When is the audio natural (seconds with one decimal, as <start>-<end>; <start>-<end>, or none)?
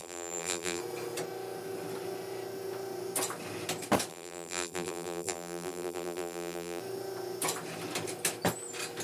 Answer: 0.8-4.1; 6.8-9.0